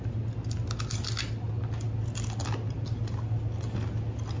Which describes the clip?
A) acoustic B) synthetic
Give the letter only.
A